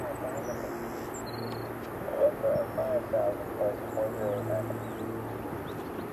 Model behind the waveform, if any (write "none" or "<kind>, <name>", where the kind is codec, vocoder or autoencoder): none